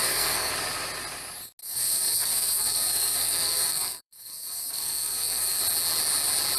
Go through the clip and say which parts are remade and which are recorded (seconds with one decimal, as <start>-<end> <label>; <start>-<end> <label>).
0.0-0.5 remade; 0.5-1.6 recorded; 1.6-5.6 remade; 5.6-6.6 recorded